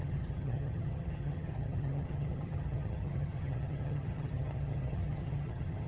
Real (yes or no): no